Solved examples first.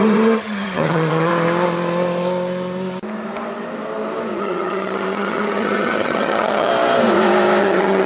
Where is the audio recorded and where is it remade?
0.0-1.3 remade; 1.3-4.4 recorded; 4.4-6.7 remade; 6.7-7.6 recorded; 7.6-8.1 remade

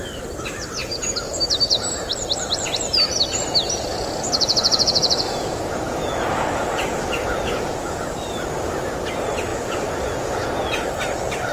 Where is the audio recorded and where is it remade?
0.0-0.8 recorded; 0.8-1.4 remade; 1.4-3.9 recorded; 3.9-8.2 remade; 8.2-9.5 recorded; 9.5-10.8 remade; 10.8-11.5 recorded

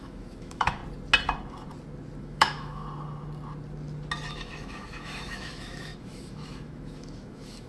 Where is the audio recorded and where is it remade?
0.0-0.8 remade; 0.8-2.2 recorded; 2.2-2.8 remade; 2.8-4.3 recorded; 4.3-7.7 remade